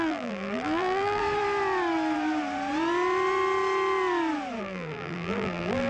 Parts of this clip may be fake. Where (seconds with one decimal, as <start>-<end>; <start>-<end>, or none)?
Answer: 0.0-1.2; 4.6-5.9